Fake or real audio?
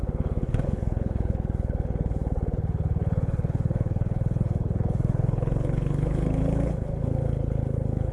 fake